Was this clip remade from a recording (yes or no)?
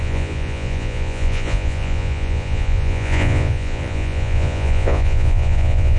yes